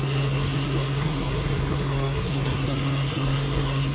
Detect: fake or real fake